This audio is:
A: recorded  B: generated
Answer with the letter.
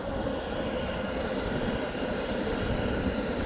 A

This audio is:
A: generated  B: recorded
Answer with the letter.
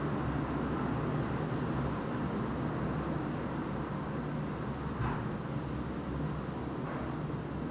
B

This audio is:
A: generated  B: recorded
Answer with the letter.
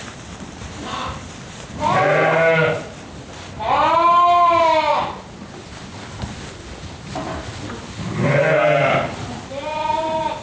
B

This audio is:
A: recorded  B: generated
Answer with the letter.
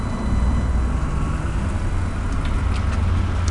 A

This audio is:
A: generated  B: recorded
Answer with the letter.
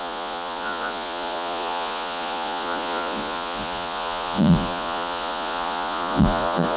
A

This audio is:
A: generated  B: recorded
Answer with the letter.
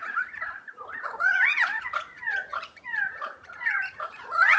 A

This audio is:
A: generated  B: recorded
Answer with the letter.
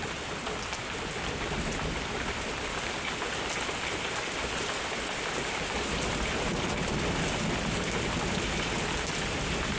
B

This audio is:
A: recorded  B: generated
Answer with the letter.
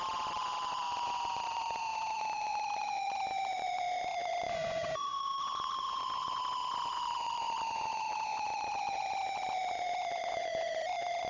B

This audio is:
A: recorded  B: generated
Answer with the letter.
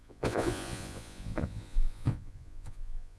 B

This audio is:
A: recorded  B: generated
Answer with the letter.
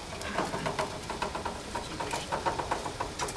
A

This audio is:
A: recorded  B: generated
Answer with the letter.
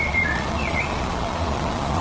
B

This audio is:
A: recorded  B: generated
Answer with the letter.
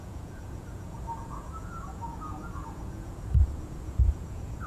B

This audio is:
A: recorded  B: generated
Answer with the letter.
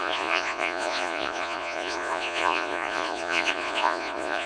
B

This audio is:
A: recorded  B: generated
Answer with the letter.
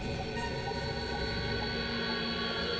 A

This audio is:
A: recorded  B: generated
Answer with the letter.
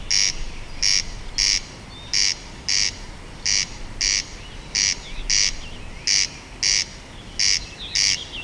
A